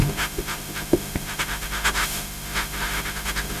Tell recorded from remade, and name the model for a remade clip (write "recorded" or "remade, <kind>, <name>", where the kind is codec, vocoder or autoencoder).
remade, autoencoder, DAC-VAE